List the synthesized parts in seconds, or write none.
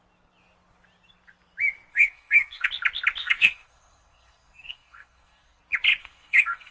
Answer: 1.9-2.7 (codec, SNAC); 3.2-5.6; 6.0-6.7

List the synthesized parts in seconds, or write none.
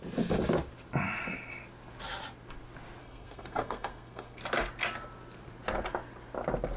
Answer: 3.0-4.4 (codec, SNAC)